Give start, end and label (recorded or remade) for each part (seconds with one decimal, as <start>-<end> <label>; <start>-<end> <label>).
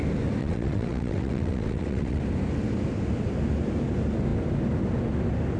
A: 0.0-0.4 recorded; 0.4-2.2 remade; 2.2-5.6 recorded